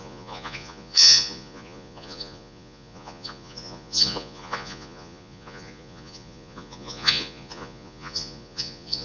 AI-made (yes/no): yes